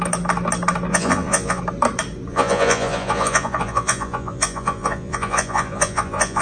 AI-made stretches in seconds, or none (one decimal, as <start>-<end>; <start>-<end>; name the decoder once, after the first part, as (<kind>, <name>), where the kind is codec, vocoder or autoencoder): 0.9-1.6 (vocoder, Vocos); 2.3-6.4